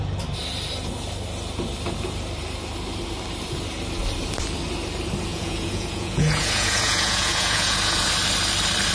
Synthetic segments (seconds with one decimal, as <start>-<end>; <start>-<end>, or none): 5.3-8.1